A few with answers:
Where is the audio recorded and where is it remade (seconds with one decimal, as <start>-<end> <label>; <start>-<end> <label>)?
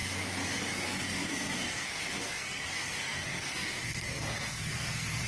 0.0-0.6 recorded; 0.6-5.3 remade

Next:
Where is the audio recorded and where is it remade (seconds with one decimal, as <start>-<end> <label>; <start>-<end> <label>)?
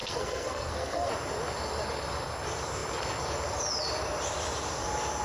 0.0-1.1 remade; 1.1-5.2 recorded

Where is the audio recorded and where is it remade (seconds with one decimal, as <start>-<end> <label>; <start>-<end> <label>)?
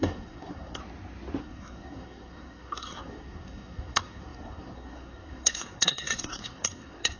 0.0-0.8 remade; 0.8-1.4 recorded; 1.4-7.2 remade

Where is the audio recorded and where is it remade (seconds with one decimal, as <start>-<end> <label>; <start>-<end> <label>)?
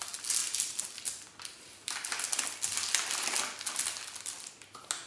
0.0-5.1 recorded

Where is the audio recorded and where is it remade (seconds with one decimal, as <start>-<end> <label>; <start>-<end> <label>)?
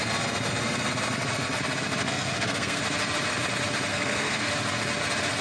0.0-2.0 recorded; 2.0-2.8 remade; 2.8-3.9 recorded; 3.9-4.5 remade; 4.5-5.4 recorded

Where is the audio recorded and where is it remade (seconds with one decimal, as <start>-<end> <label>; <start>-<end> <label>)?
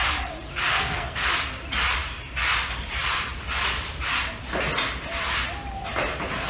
0.0-0.7 recorded; 0.7-1.2 remade; 1.2-6.5 recorded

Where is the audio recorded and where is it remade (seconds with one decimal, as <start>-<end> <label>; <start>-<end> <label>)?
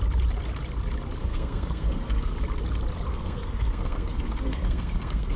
0.0-1.2 recorded; 1.2-2.3 remade; 2.3-3.1 recorded; 3.1-5.4 remade